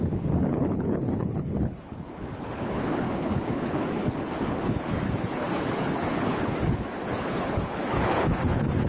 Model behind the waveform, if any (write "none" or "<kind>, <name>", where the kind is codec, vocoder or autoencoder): codec, HILCodec